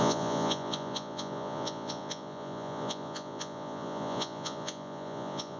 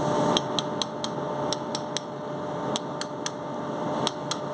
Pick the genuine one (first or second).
second